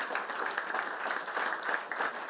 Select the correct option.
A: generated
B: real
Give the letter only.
B